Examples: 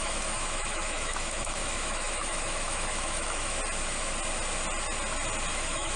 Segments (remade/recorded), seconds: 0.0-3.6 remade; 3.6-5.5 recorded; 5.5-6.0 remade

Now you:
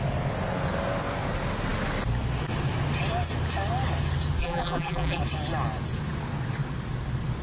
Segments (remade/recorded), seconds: 0.0-4.4 recorded; 4.4-5.2 remade; 5.2-7.4 recorded

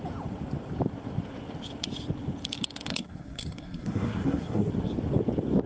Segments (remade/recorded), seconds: 0.0-2.9 recorded; 2.9-4.7 remade; 4.7-5.7 recorded

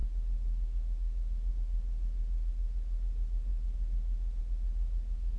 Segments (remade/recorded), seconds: 0.0-5.4 recorded

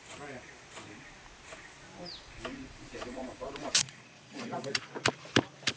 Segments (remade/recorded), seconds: 0.0-2.5 recorded; 2.5-4.9 remade; 4.9-5.8 recorded

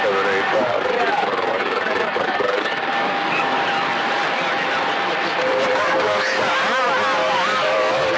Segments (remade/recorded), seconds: 0.0-0.5 recorded; 0.5-3.6 remade; 3.6-5.7 recorded; 5.7-6.5 remade; 6.5-7.2 recorded; 7.2-8.2 remade

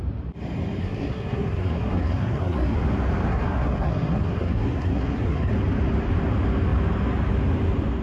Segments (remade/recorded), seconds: 0.0-0.8 recorded; 0.8-2.8 remade; 2.8-3.3 recorded; 3.3-5.5 remade; 5.5-8.0 recorded

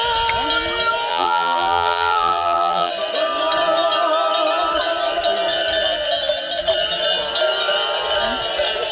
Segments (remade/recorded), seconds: 0.0-1.1 recorded; 1.1-2.9 remade; 2.9-8.9 recorded